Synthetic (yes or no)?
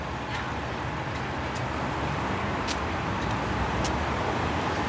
no